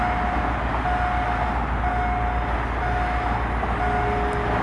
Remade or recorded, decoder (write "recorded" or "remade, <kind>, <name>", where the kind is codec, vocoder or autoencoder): recorded